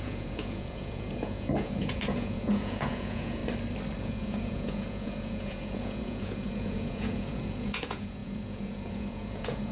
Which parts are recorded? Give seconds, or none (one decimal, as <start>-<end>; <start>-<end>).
3.4-4.0